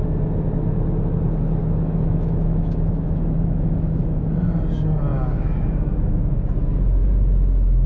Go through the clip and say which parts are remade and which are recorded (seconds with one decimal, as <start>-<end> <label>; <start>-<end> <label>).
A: 0.0-1.6 recorded; 1.6-4.2 remade; 4.2-5.1 recorded; 5.1-6.1 remade; 6.1-7.9 recorded